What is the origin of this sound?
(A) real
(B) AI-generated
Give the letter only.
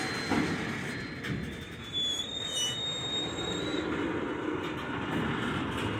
A